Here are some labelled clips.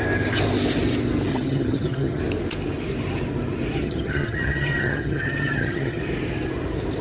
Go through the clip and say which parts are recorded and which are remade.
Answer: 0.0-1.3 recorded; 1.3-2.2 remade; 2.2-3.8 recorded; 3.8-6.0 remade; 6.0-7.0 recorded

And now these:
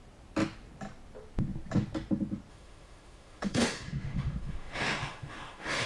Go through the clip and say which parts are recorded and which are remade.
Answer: 0.0-2.5 recorded; 2.5-5.9 remade

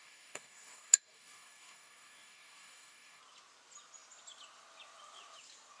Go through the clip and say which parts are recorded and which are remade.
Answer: 0.0-3.2 remade; 3.2-5.8 recorded

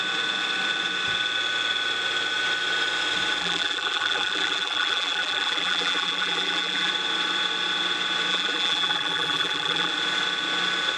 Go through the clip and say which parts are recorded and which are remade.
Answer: 0.0-3.4 recorded; 3.4-6.9 remade; 6.9-8.3 recorded; 8.3-9.9 remade; 9.9-11.0 recorded